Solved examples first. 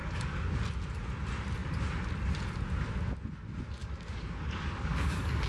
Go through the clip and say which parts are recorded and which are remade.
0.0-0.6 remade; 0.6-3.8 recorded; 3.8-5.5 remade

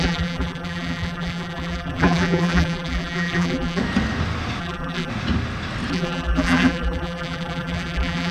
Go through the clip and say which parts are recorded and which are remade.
0.0-3.8 remade; 3.8-4.6 recorded; 4.6-5.1 remade; 5.1-5.9 recorded; 5.9-8.3 remade

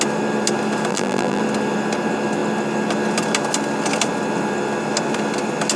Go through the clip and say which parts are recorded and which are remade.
0.0-0.9 recorded; 0.9-1.4 remade; 1.4-5.8 recorded

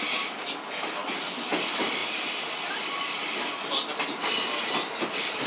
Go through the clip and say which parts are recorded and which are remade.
0.0-5.5 recorded

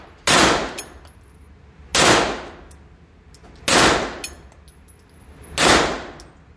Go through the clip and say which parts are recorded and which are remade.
0.0-6.6 recorded

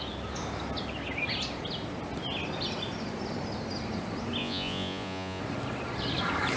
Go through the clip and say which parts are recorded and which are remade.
0.0-4.4 recorded; 4.4-5.4 remade; 5.4-6.6 recorded